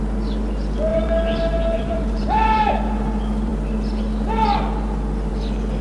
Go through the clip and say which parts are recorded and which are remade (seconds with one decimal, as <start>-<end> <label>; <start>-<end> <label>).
0.0-0.9 recorded; 0.9-2.7 remade; 2.7-5.8 recorded